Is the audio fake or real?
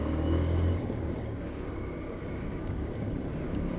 fake